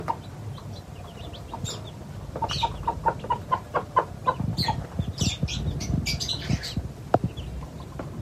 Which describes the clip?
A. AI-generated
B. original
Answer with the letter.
B